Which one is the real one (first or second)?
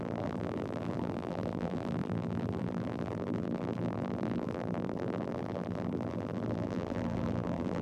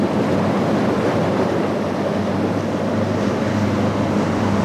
second